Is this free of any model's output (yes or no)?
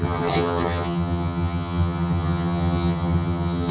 no